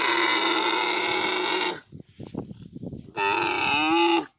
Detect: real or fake real